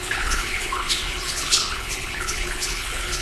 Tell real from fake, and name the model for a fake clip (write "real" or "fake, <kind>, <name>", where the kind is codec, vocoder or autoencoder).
fake, codec, HILCodec